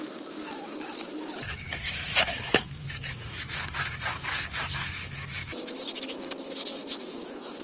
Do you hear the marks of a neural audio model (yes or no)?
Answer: yes